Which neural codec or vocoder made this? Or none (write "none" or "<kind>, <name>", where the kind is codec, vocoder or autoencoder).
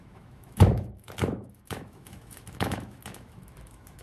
autoencoder, DAC-VAE